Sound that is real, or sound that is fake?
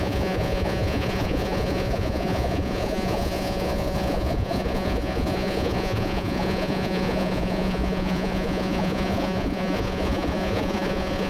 fake